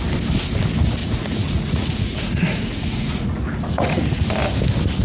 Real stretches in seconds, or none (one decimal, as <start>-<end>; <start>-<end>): 0.0-1.0; 4.0-5.0